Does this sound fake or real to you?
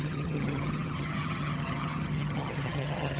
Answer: fake